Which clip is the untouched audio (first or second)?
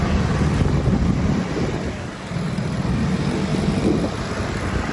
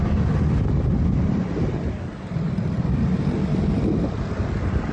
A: first